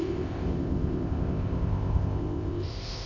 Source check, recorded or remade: remade